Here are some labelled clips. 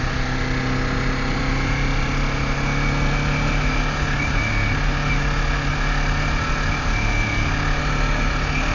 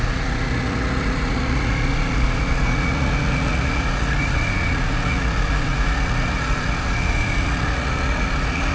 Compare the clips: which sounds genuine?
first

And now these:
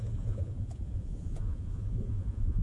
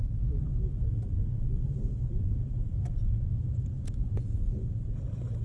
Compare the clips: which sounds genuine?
second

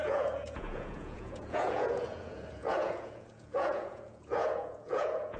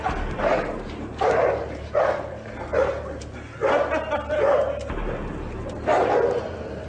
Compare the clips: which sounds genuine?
second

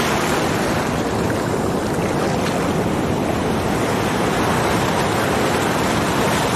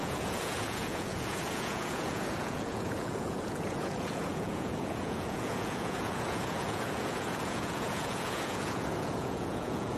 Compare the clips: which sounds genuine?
first